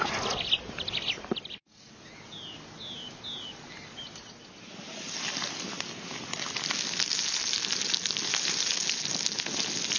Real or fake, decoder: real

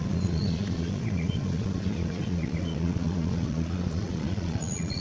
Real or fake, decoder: fake, vocoder, Vocos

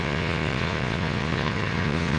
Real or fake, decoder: fake, vocoder, Vocos